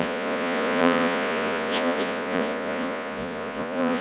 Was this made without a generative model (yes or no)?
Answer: no